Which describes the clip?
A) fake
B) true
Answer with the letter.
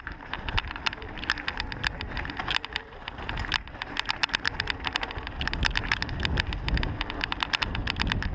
B